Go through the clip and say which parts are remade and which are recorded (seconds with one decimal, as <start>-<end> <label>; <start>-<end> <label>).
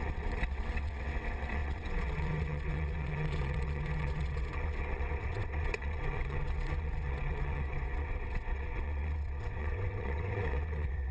0.0-11.1 remade